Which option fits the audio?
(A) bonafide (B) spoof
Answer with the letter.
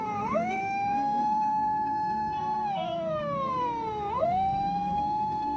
B